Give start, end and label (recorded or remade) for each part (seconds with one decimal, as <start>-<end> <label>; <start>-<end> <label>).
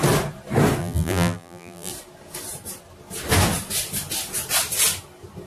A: 0.0-0.8 recorded; 0.8-1.9 remade; 1.9-5.5 recorded